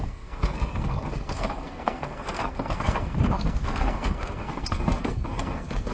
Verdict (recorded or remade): remade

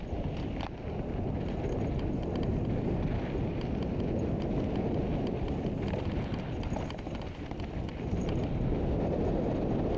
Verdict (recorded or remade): recorded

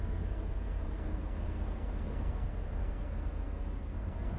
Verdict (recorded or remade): remade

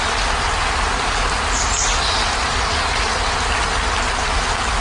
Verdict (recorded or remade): recorded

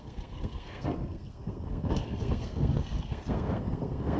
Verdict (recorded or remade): remade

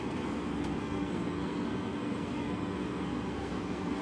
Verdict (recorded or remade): remade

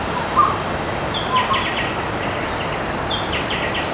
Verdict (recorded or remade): recorded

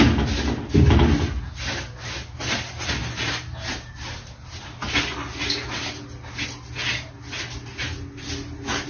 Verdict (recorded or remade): recorded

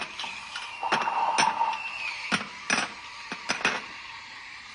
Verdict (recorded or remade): recorded